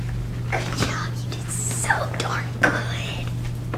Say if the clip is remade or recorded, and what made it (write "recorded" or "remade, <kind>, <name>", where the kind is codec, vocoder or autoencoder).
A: recorded